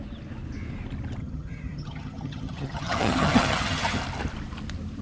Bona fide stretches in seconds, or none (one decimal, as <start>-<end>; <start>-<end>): 0.0-1.2; 4.0-5.0